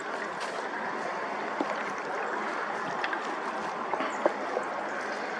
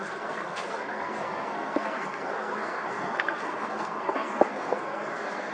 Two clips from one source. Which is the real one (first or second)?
first